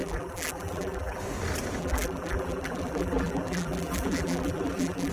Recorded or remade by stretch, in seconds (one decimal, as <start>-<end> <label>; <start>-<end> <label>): 0.0-1.2 remade; 1.2-1.8 recorded; 1.8-5.1 remade

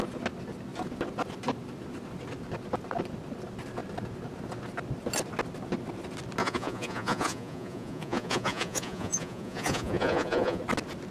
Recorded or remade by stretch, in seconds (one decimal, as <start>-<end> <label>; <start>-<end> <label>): 0.0-6.4 recorded; 6.4-10.6 remade; 10.6-11.1 recorded

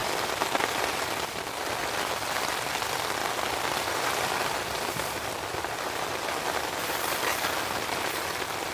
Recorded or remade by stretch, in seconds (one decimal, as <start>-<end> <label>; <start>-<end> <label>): 0.0-8.7 recorded

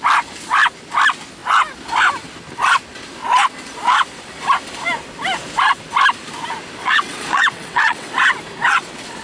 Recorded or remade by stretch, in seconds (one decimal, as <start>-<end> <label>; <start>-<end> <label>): 0.0-6.8 recorded; 6.8-8.1 remade; 8.1-9.2 recorded

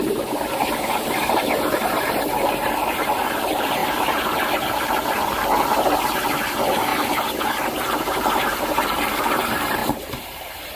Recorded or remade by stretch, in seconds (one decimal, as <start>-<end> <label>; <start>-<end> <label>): 0.0-6.9 remade; 6.9-7.7 recorded; 7.7-10.8 remade

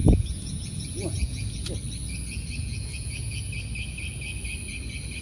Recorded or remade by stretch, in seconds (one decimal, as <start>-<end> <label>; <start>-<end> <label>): 0.0-1.7 remade; 1.7-2.6 recorded; 2.6-3.5 remade; 3.5-5.2 recorded

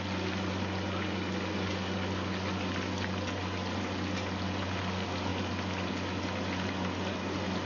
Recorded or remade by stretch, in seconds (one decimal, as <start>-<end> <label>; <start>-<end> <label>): 0.0-7.7 recorded

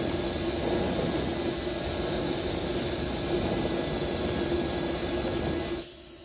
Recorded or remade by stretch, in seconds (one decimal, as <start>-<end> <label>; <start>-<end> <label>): 0.0-2.7 recorded; 2.7-3.6 remade; 3.6-6.2 recorded